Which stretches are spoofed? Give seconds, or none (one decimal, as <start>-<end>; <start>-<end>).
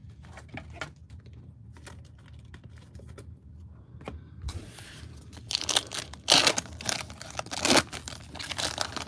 4.5-5.0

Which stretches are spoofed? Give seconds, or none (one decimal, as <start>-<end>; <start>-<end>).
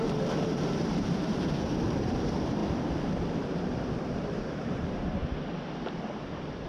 0.0-2.6; 4.0-5.2; 6.1-6.7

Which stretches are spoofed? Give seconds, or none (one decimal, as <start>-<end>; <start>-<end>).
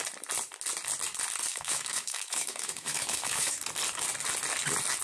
1.5-3.6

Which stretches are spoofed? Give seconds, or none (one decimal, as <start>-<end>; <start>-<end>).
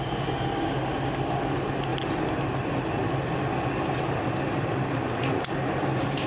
none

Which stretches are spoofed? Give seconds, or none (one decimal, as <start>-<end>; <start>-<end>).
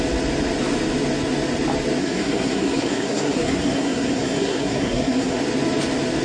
2.0-5.4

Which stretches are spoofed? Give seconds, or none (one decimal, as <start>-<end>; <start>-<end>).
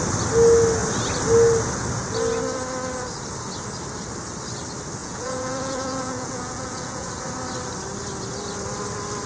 5.0-7.1